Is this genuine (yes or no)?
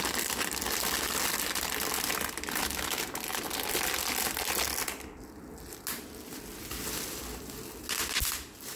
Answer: yes